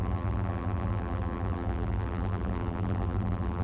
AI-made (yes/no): yes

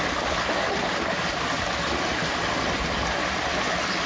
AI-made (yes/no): no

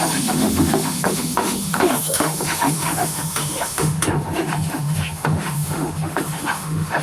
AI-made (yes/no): yes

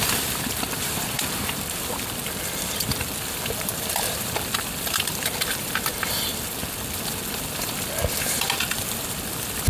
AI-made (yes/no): yes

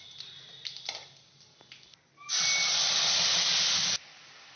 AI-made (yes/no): no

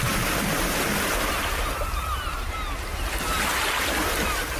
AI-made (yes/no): no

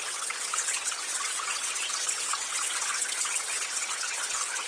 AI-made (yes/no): yes